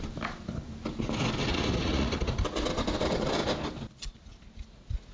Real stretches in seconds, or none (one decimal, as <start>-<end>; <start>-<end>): 0.0-1.5; 2.2-5.1